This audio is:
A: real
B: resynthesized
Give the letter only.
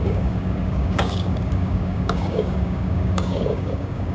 B